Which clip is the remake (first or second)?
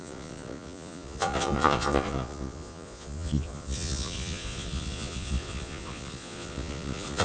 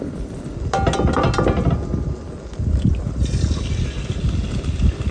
first